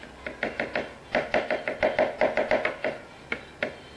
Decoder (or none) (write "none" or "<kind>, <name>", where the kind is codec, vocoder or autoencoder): none